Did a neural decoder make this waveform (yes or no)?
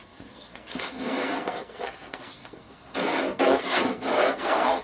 yes